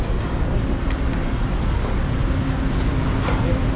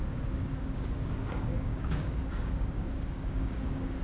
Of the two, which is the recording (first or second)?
first